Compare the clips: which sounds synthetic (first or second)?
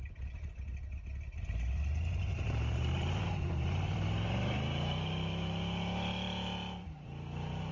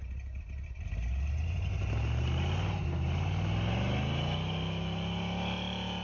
first